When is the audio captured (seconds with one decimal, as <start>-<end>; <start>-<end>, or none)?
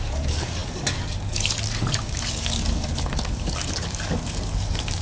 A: none